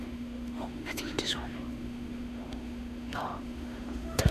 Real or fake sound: fake